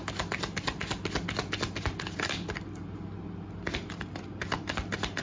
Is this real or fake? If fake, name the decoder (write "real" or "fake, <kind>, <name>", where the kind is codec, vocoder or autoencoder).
real